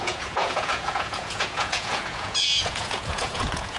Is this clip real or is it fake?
fake